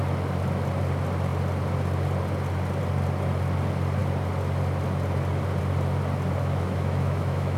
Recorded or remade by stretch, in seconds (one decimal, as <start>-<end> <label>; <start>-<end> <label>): 0.0-6.4 recorded; 6.4-7.6 remade